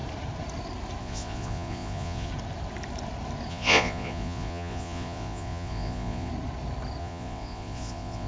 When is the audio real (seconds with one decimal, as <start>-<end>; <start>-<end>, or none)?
0.0-1.0; 2.3-3.5; 6.3-7.0